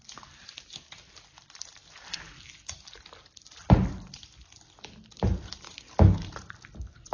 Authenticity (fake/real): real